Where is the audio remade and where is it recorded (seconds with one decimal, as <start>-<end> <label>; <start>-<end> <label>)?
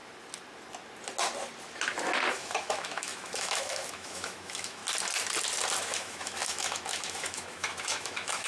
0.0-2.3 recorded; 2.3-4.8 remade; 4.8-5.8 recorded; 5.8-8.5 remade